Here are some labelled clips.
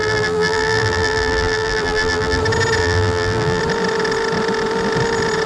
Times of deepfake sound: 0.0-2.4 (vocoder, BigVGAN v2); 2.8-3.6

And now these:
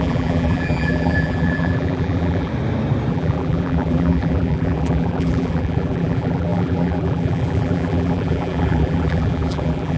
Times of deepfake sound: 0.0-2.5 (vocoder, BigVGAN v2); 3.1-10.0

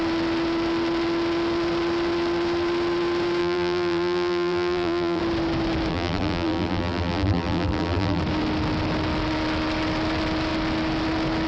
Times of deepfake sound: 3.4-5.2 (vocoder, BigVGAN v2); 5.9-8.2

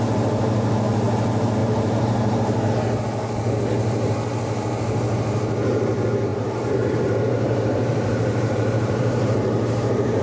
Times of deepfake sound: 1.6-2.7 (vocoder, BigVGAN v2); 6.3-10.2